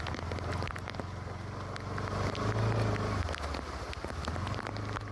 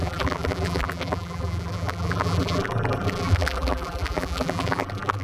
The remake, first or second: second